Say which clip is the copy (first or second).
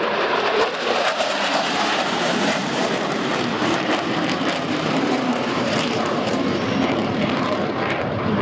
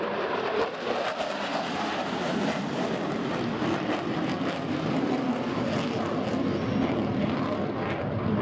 first